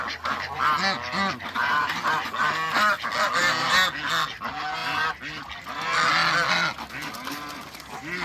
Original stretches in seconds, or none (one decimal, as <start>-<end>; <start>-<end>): 0.0-3.4; 3.9-8.2

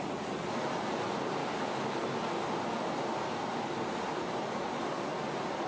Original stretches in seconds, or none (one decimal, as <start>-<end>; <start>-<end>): 0.0-5.7

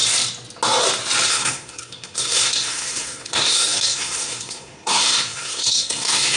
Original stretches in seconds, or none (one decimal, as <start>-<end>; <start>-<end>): 0.0-1.3

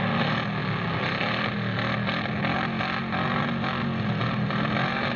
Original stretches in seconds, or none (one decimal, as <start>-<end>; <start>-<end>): 0.0-5.2